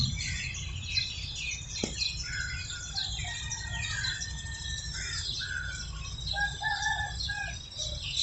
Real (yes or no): yes